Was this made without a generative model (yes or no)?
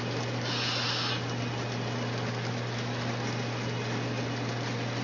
yes